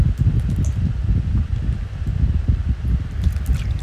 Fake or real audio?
real